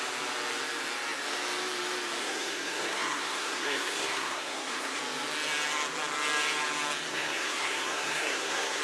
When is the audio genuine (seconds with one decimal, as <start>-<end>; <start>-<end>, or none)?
0.0-2.2; 5.0-7.1